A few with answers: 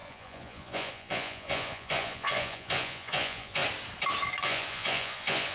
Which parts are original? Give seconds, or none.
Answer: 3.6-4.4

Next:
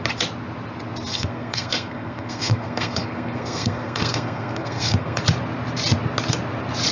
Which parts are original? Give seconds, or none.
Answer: 0.0-1.1; 5.2-6.9

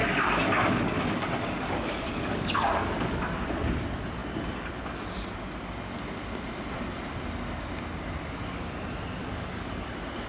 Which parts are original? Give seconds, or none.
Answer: 3.2-9.2; 9.9-10.3